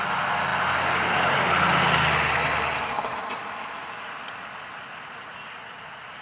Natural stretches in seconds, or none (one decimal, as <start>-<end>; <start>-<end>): 0.0-3.1; 3.8-6.2